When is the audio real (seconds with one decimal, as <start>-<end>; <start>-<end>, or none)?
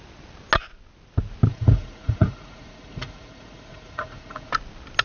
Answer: 0.0-1.5; 4.5-5.0